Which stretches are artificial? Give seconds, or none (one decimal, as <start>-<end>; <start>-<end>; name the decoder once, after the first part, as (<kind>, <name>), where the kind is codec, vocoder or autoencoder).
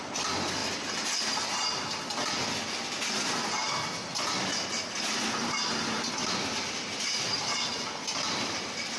none